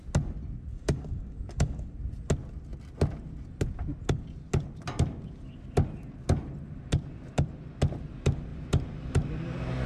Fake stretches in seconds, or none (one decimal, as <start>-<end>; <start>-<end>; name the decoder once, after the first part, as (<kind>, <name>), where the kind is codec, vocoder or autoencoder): 0.7-1.9 (codec, DAC)